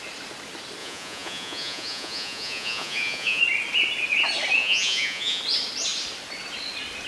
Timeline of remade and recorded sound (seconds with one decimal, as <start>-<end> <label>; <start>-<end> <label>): 0.0-0.8 recorded; 0.8-3.4 remade; 3.4-4.6 recorded; 4.6-5.4 remade; 5.4-7.1 recorded